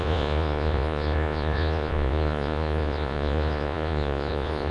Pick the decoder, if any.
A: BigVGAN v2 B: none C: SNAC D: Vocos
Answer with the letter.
D